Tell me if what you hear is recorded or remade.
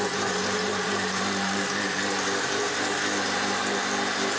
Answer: remade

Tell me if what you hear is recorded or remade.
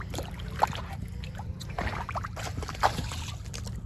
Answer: recorded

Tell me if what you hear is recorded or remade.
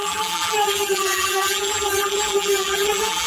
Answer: remade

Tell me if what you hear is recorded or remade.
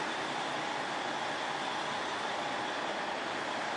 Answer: recorded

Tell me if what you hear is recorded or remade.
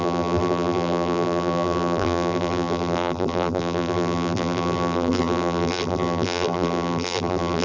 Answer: remade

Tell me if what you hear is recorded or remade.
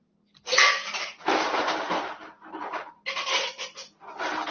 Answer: recorded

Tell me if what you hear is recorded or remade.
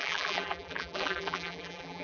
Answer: remade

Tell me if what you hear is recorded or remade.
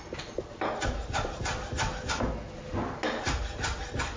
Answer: recorded